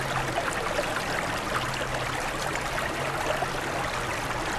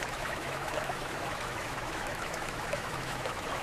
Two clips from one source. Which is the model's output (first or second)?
second